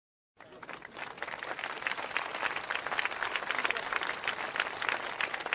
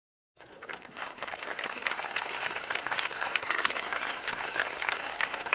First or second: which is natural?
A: first